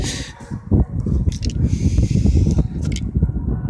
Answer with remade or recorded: recorded